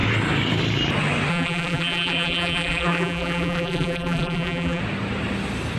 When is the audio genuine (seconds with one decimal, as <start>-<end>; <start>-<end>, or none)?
0.0-1.3; 4.8-5.8